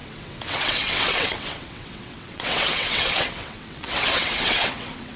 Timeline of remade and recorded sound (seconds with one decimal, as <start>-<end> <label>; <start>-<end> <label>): 0.0-5.2 remade